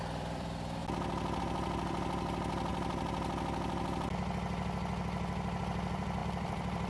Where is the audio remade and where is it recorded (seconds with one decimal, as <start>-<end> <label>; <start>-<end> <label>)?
0.0-0.8 remade; 0.8-1.4 recorded; 1.4-2.7 remade; 2.7-5.6 recorded; 5.6-6.9 remade